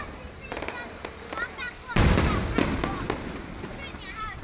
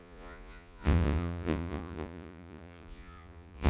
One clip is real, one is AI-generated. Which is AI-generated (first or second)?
second